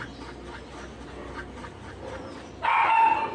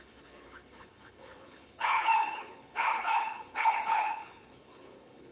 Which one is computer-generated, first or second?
second